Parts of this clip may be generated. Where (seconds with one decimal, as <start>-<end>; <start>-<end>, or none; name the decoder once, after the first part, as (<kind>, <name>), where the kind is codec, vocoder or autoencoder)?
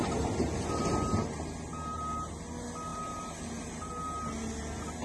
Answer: 2.9-3.9 (vocoder, BigVGAN v2)